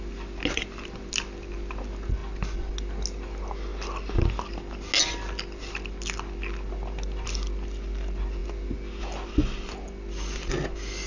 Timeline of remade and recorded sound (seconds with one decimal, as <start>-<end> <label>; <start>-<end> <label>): 0.0-11.1 recorded